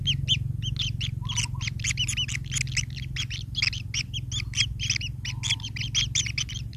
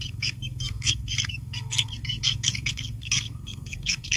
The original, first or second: first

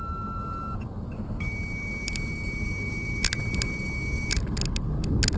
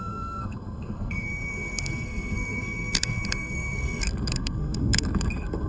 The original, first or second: first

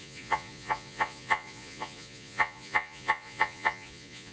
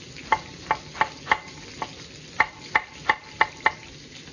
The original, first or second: second